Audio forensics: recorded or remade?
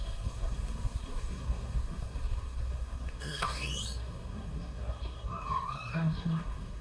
remade